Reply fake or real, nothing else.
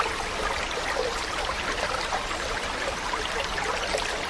real